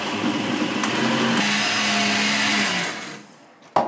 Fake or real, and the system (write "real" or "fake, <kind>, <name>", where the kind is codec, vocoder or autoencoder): real